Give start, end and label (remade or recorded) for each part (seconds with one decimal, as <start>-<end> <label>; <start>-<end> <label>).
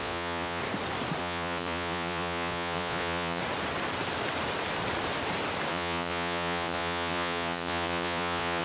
0.0-0.6 remade; 0.6-1.2 recorded; 1.2-3.4 remade; 3.4-5.7 recorded; 5.7-8.6 remade